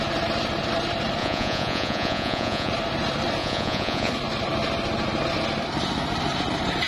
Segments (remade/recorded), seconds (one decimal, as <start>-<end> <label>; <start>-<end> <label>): 0.0-1.2 recorded; 1.2-2.7 remade; 2.7-3.4 recorded; 3.4-4.1 remade; 4.1-6.9 recorded